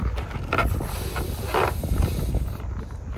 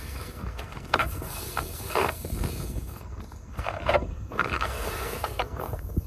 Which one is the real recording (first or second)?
first